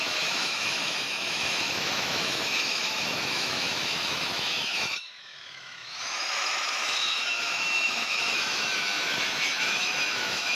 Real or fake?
fake